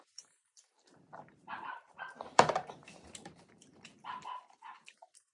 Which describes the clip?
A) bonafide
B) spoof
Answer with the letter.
B